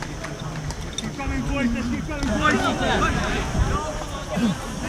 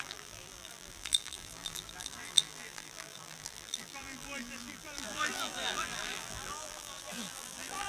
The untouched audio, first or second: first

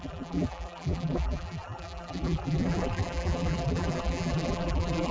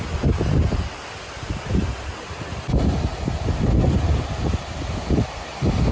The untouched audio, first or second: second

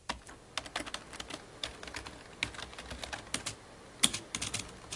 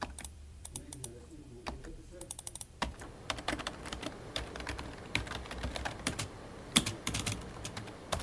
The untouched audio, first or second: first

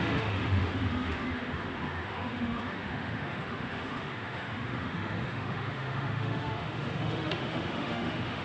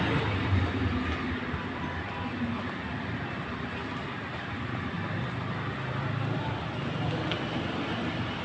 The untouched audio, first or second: second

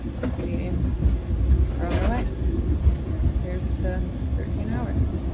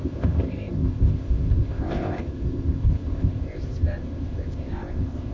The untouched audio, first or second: first